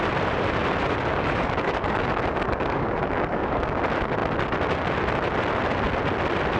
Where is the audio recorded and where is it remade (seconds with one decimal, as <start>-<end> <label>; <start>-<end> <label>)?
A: 0.0-1.1 recorded; 1.1-3.8 remade; 3.8-6.6 recorded